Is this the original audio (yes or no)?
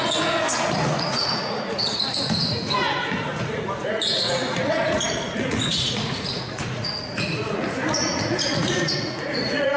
no